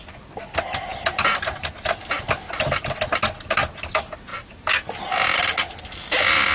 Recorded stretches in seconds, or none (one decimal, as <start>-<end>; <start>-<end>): 0.0-6.5